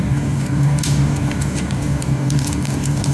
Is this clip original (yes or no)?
no